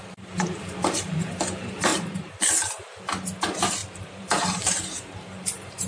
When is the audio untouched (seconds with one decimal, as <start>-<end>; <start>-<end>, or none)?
1.4-1.9; 2.4-3.8